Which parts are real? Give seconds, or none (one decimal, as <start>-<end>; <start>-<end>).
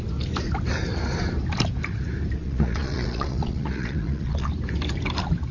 0.0-2.4; 4.5-5.5